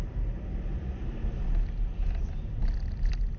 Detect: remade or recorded recorded